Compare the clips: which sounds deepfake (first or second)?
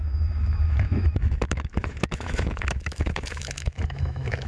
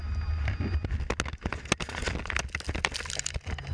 first